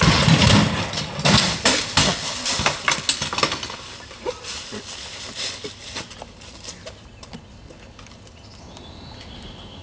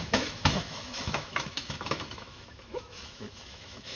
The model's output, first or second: second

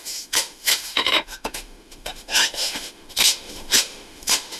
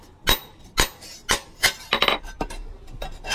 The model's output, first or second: first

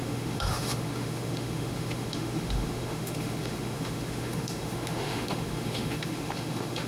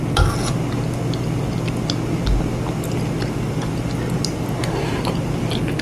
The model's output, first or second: first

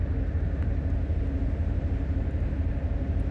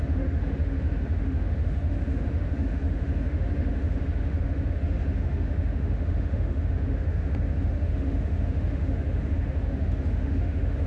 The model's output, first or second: second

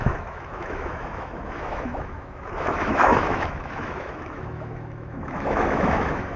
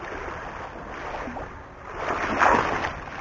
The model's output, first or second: first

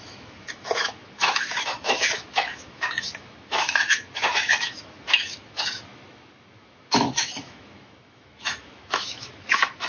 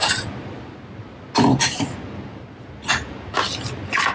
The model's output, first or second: first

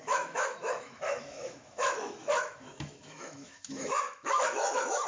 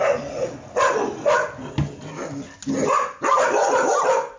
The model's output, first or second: first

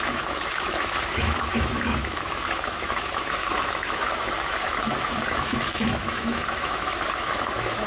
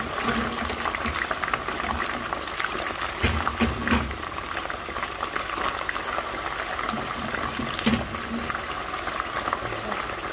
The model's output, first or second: first